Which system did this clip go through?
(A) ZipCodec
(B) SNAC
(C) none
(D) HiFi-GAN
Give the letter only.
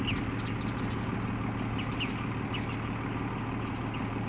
C